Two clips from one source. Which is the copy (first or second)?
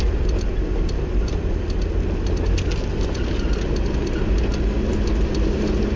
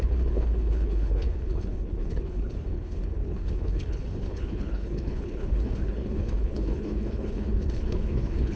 second